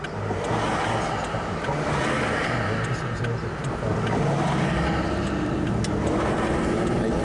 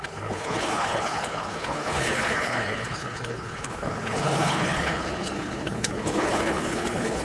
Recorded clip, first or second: first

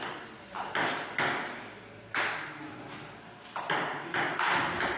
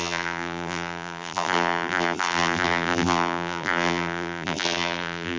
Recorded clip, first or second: first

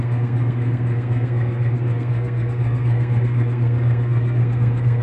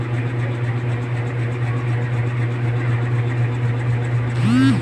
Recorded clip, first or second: second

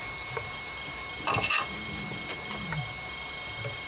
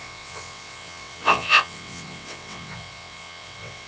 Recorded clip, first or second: first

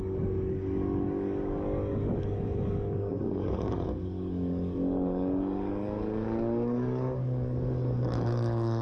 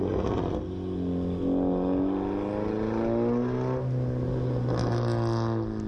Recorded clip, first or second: second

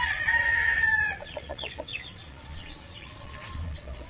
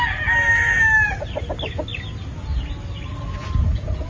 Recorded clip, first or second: second